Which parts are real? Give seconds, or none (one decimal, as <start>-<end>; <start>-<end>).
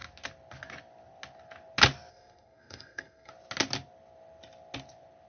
0.0-2.1; 3.3-5.3